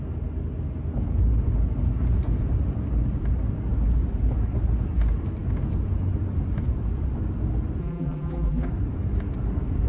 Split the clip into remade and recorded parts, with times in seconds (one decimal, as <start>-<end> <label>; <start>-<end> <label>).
0.0-7.8 recorded; 7.8-8.7 remade; 8.7-9.9 recorded